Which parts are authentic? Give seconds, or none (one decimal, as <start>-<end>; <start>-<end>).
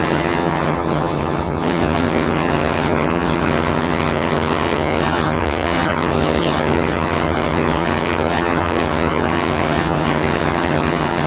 none